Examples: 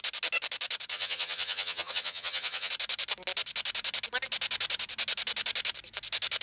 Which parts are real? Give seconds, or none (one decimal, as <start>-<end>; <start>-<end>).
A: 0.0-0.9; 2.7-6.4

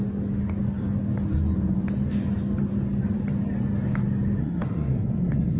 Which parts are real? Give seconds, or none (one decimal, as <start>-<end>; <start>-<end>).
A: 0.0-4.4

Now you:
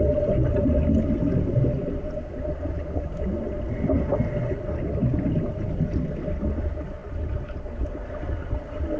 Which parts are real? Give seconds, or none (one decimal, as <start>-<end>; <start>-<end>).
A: 0.0-0.4; 1.0-7.0; 7.7-9.0